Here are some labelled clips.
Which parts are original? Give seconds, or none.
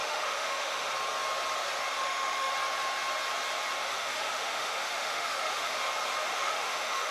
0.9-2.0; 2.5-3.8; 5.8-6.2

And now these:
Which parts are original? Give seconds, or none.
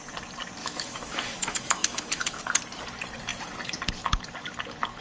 0.0-0.6; 2.4-5.0